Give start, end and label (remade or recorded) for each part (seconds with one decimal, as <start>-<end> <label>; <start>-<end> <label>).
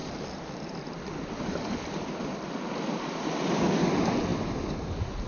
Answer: 0.0-5.3 recorded